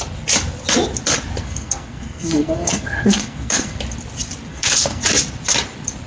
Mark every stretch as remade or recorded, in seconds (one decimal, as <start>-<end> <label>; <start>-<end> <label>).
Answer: 0.0-1.4 recorded; 1.4-3.8 remade; 3.8-4.5 recorded; 4.5-5.0 remade; 5.0-6.1 recorded